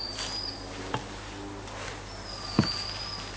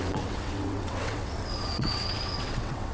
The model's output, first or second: second